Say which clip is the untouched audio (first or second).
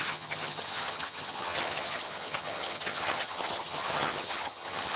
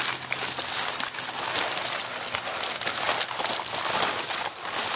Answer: second